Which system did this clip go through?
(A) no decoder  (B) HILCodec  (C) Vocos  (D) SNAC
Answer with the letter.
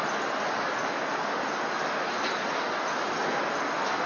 A